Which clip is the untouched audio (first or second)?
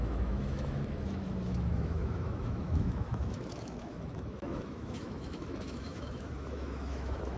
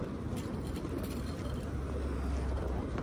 second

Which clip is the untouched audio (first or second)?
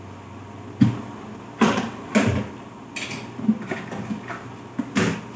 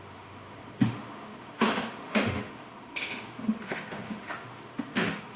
first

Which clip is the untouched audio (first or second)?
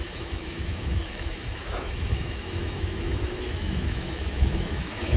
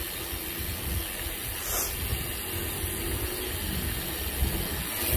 second